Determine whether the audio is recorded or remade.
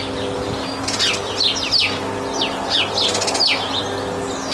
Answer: recorded